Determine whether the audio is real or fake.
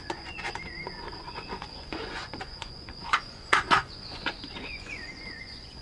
fake